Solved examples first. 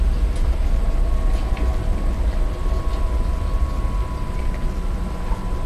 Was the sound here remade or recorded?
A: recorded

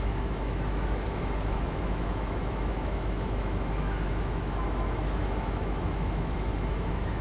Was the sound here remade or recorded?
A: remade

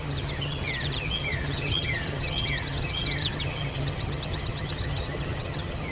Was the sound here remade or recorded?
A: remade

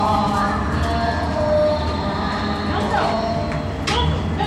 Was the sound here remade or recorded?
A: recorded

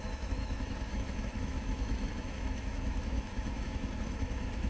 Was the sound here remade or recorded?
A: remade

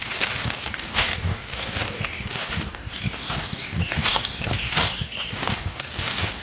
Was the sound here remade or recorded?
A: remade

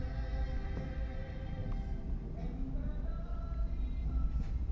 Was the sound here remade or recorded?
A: recorded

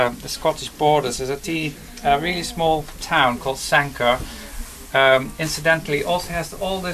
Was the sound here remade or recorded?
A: recorded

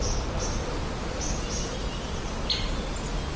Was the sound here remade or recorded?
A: recorded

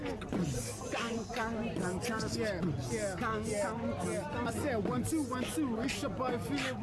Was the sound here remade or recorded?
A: recorded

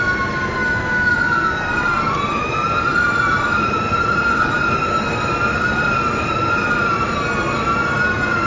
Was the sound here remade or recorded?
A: recorded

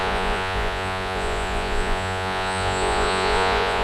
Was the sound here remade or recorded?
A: remade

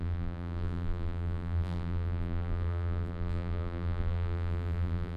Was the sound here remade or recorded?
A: remade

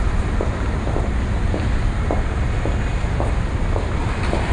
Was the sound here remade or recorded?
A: recorded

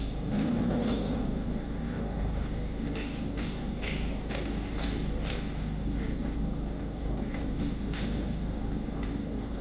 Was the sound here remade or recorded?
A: remade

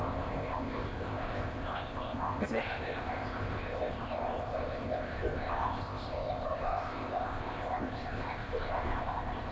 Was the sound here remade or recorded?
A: remade